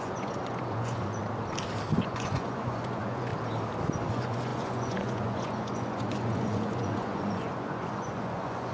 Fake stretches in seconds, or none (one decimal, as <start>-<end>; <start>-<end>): 0.0-1.2; 2.0-3.3; 4.1-8.7